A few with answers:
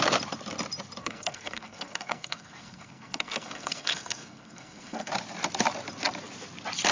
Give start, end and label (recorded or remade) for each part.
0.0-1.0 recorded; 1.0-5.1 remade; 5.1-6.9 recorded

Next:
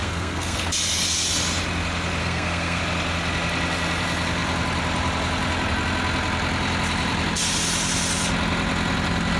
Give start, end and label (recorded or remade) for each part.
0.0-0.7 remade; 0.7-2.2 recorded; 2.2-2.8 remade; 2.8-9.4 recorded

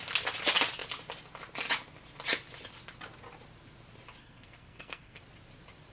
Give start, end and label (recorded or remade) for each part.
0.0-4.2 recorded; 4.2-5.2 remade; 5.2-5.9 recorded

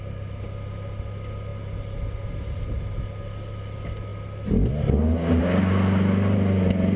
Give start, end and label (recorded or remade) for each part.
0.0-7.0 recorded

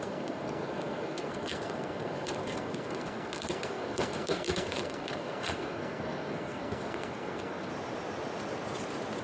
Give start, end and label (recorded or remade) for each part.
0.0-7.7 remade; 7.7-9.2 recorded